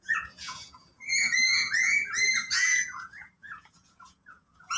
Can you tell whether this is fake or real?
fake